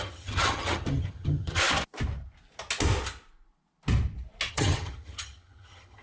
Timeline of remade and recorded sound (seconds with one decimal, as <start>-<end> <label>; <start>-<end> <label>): 0.0-1.6 remade; 1.6-4.5 recorded; 4.5-6.0 remade